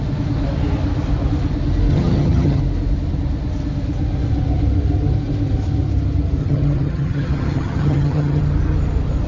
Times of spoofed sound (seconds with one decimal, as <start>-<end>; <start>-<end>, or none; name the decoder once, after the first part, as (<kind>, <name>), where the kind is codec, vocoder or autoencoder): 1.9-2.6 (vocoder, HiFi-GAN); 6.4-8.4